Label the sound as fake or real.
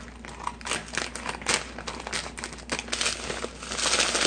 real